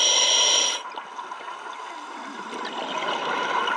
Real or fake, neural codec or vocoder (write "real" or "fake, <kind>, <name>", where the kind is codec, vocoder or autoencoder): real